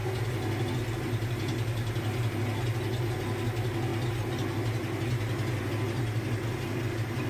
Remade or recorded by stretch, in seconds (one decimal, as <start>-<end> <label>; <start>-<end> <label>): 0.0-7.3 recorded